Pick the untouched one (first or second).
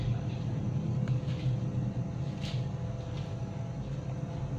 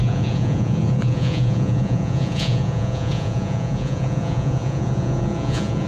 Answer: first